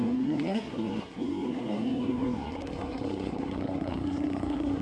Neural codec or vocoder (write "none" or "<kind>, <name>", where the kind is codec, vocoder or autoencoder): codec, SNAC